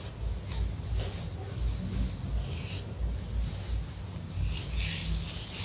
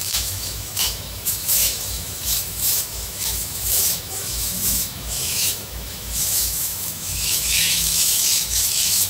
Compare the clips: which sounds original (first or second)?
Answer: first